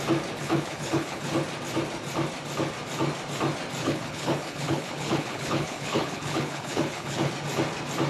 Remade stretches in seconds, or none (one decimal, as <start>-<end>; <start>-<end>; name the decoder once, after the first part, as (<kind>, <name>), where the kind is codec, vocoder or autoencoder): 0.4-1.3 (codec, HILCodec); 3.8-7.3